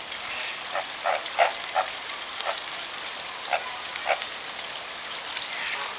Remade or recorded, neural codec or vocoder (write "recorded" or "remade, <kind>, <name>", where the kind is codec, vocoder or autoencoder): recorded